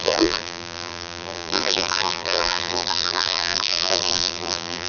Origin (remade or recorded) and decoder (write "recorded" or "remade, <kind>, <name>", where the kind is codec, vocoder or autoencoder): remade, vocoder, BigVGAN v2